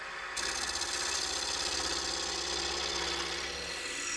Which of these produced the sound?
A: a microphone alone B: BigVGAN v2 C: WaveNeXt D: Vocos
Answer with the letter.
A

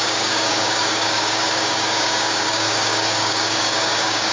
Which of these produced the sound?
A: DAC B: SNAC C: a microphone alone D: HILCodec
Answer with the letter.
A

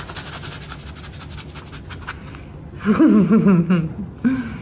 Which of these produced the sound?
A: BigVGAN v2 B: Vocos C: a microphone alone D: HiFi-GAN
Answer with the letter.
C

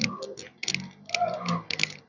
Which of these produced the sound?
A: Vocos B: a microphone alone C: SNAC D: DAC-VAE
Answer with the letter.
B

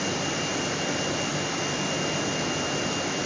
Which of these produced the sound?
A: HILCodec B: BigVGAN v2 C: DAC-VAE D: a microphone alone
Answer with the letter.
D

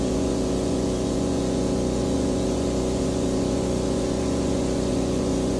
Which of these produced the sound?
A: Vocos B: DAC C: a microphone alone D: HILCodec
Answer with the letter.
A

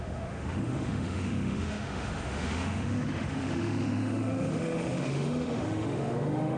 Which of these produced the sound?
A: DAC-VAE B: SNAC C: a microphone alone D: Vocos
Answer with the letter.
A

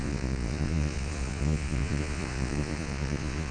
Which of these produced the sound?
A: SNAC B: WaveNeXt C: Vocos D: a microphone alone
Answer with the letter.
C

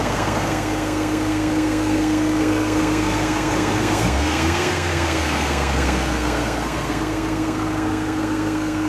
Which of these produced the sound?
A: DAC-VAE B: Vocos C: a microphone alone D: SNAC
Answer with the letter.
D